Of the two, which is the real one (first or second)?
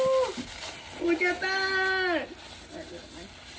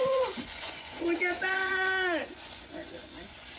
first